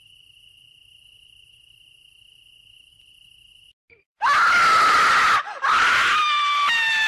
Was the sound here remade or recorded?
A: remade